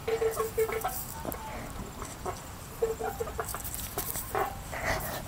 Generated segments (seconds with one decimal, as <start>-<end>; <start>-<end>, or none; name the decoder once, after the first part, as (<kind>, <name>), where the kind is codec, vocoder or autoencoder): 2.6-5.3 (vocoder, BigVGAN v2)